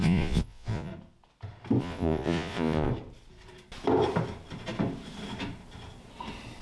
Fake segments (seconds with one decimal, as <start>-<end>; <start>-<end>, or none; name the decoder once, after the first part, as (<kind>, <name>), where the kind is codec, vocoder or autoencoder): 0.0-0.9 (vocoder, Vocos); 1.8-2.9

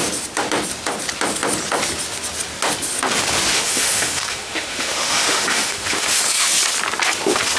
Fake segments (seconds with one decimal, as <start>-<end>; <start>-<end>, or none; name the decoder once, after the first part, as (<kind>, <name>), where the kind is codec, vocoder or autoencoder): 3.5-6.6 (autoencoder, DAC-VAE)

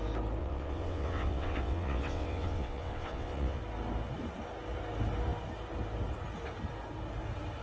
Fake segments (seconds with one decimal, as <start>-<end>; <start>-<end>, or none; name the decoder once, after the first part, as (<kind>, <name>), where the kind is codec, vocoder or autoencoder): 0.4-3.6 (vocoder, WaveNeXt)